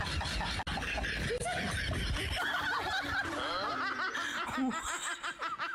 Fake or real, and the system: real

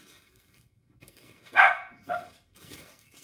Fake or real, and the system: fake, codec, SNAC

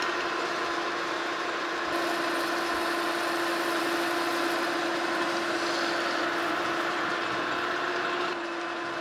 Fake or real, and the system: real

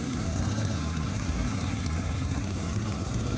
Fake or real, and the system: fake, codec, SNAC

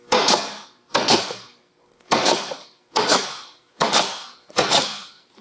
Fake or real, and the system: fake, codec, SNAC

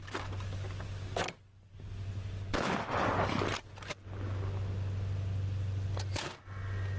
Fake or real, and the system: real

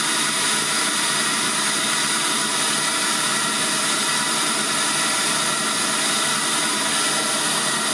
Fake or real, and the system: real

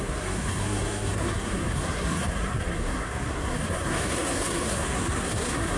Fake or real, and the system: fake, codec, SNAC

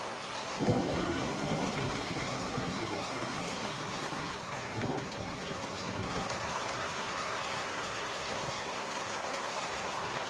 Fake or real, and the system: fake, codec, SNAC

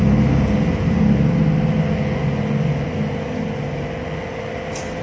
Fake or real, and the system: real